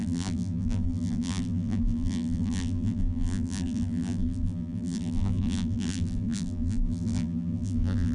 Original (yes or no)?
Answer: no